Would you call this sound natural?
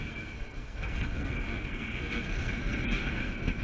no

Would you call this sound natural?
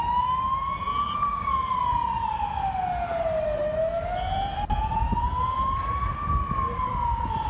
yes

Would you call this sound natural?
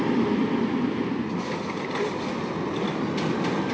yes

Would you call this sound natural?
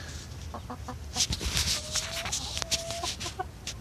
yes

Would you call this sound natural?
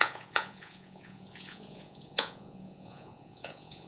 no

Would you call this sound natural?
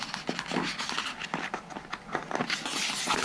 yes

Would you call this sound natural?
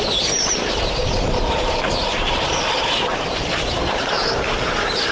no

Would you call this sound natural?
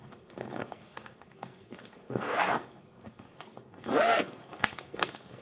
no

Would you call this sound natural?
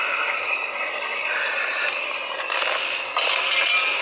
yes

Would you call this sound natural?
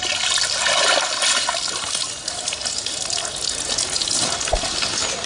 yes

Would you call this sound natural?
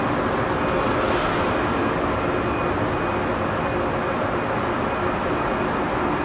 yes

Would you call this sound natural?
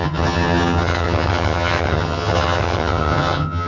no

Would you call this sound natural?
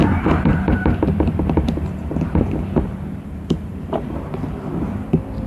no